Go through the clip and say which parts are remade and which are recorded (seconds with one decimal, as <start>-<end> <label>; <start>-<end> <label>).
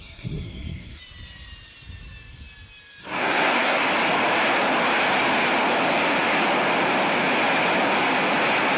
0.0-1.0 remade; 1.0-3.0 recorded; 3.0-3.8 remade; 3.8-8.8 recorded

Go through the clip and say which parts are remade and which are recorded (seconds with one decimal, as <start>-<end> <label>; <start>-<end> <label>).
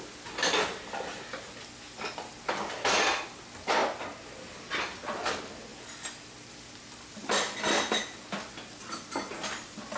0.0-10.0 recorded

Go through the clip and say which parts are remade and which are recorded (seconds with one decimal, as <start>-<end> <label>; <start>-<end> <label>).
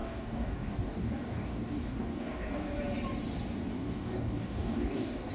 0.0-2.7 remade; 2.7-3.7 recorded; 3.7-5.3 remade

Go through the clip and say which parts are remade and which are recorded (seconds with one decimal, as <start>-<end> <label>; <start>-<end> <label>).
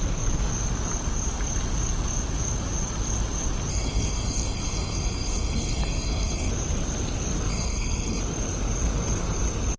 0.0-3.7 recorded; 3.7-6.5 remade; 6.5-7.5 recorded; 7.5-8.2 remade; 8.2-9.8 recorded